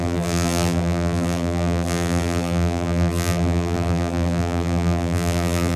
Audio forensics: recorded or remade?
remade